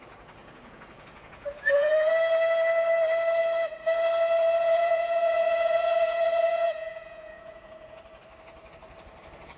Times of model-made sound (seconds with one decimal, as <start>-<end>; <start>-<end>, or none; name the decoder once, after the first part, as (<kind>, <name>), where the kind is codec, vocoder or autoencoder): 0.4-2.1 (vocoder, Vocos); 4.6-8.0